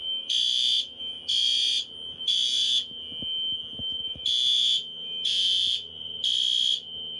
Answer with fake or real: real